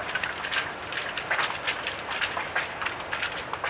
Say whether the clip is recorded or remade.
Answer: recorded